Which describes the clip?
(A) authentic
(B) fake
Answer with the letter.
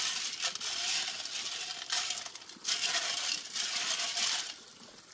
B